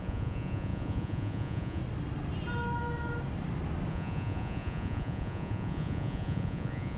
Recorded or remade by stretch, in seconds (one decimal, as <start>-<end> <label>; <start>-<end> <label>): 0.0-1.8 remade; 1.8-3.9 recorded; 3.9-7.0 remade